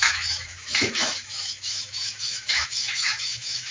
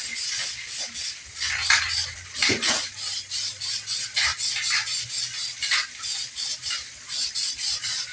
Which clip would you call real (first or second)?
second